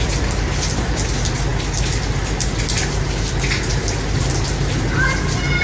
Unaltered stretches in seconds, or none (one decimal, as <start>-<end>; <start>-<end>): 0.0-5.6